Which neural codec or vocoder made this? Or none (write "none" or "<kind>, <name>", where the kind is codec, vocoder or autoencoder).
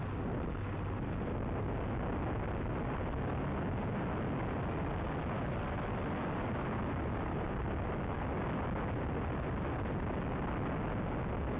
none